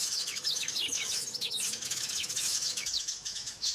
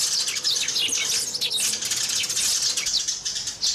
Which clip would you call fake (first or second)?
first